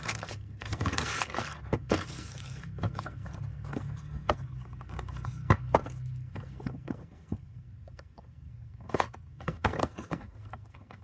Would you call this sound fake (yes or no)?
yes